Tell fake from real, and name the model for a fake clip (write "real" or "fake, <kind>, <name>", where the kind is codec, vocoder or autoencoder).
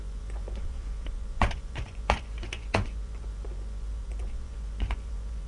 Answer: fake, vocoder, Vocos